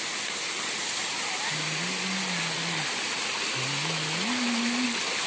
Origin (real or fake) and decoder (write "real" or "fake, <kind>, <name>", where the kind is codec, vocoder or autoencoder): real